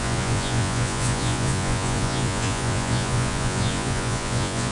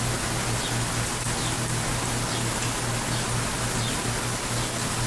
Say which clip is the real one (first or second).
second